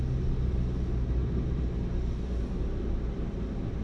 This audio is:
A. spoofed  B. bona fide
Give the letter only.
B